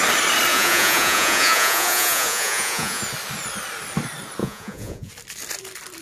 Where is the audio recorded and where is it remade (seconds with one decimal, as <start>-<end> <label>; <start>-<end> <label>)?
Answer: 0.0-0.5 recorded; 0.5-3.0 remade; 3.0-4.4 recorded; 4.4-5.1 remade; 5.1-6.0 recorded